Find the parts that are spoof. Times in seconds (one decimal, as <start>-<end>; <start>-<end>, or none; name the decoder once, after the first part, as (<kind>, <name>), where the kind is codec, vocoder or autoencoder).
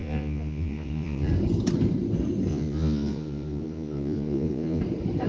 0.0-1.3 (vocoder, Vocos); 2.5-4.8